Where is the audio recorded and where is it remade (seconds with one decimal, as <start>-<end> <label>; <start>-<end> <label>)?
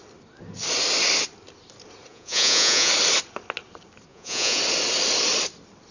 0.0-2.1 recorded; 2.1-2.9 remade; 2.9-4.1 recorded; 4.1-4.6 remade; 4.6-5.9 recorded